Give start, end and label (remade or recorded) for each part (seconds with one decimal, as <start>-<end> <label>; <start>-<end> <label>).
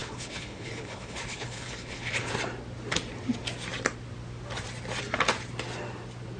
0.0-2.3 remade; 2.3-6.4 recorded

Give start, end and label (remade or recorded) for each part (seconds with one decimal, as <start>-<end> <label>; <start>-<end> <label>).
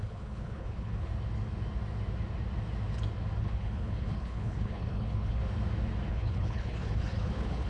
0.0-1.1 remade; 1.1-3.4 recorded; 3.4-5.4 remade; 5.4-6.1 recorded; 6.1-7.7 remade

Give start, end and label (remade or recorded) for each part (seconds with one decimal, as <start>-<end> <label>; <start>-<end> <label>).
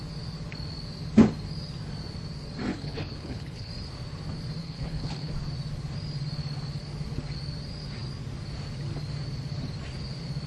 0.0-2.7 recorded; 2.7-3.7 remade; 3.7-4.6 recorded; 4.6-5.3 remade; 5.3-10.5 recorded